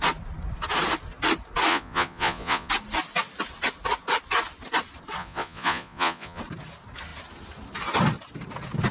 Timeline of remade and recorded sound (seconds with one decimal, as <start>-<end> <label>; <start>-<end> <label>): 0.0-1.7 recorded; 1.7-2.7 remade; 2.7-5.2 recorded; 5.2-6.4 remade; 6.4-8.9 recorded